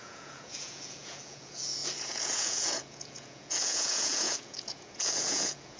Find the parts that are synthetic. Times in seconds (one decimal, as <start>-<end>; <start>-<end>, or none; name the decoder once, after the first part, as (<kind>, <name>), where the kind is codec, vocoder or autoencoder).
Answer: 0.0-5.8 (vocoder, Vocos)